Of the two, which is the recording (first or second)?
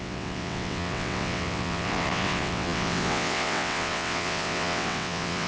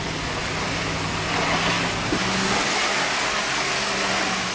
second